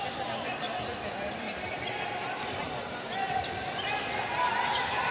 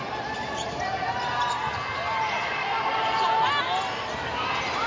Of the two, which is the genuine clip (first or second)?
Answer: second